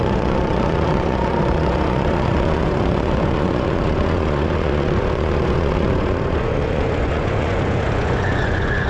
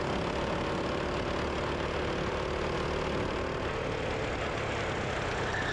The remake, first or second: first